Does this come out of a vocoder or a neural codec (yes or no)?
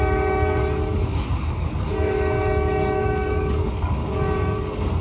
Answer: yes